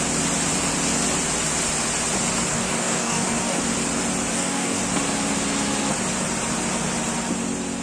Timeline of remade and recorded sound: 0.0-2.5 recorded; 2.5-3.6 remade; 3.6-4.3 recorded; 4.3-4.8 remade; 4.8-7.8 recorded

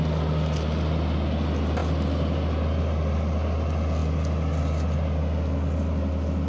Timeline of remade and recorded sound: 0.0-6.5 recorded

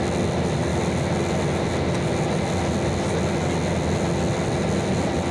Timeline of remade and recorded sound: 0.0-5.3 recorded

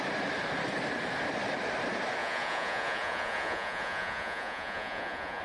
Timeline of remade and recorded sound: 0.0-2.2 recorded; 2.2-5.4 remade

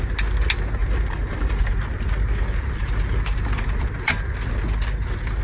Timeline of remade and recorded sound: 0.0-0.8 recorded; 0.8-1.7 remade; 1.7-5.4 recorded

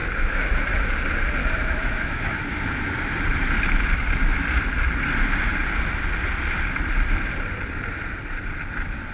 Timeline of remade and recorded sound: 0.0-0.9 remade; 0.9-1.4 recorded; 1.4-2.9 remade; 2.9-9.1 recorded

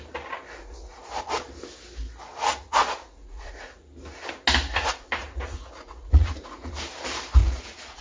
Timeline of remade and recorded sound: 0.0-0.6 recorded; 0.6-1.3 remade; 1.3-2.5 recorded; 2.5-3.8 remade; 3.8-4.7 recorded; 4.7-6.7 remade; 6.7-7.4 recorded; 7.4-8.0 remade

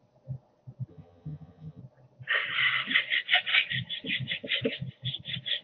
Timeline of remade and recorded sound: 0.0-0.9 recorded; 0.9-1.8 remade; 1.8-5.6 recorded